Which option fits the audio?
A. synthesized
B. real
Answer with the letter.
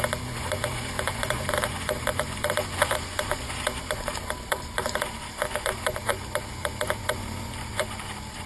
A